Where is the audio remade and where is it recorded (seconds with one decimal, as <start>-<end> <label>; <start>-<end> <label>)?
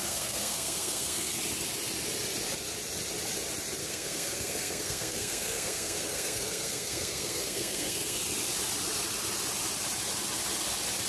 0.0-1.4 remade; 1.4-3.8 recorded; 3.8-8.2 remade; 8.2-11.1 recorded